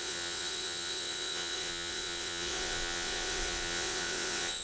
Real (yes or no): no